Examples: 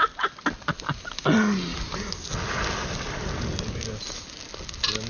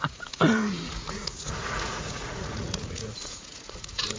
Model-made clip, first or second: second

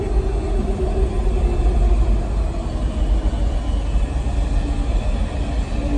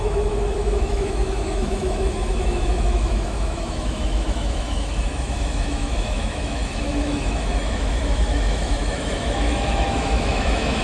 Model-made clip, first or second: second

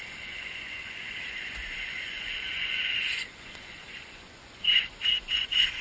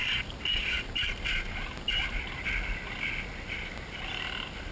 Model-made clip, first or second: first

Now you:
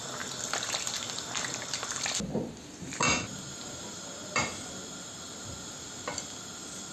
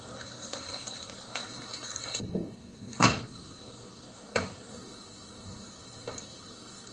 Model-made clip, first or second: second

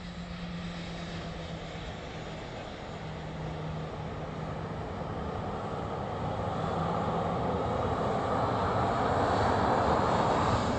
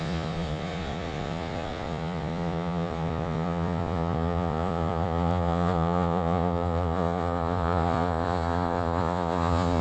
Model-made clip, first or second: second